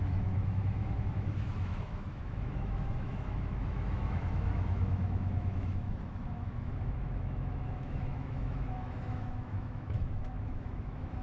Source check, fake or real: fake